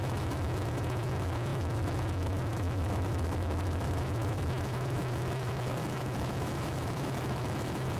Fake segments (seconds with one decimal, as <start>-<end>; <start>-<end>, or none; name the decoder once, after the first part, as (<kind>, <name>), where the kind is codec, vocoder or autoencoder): 0.0-8.0 (autoencoder, DAC-VAE)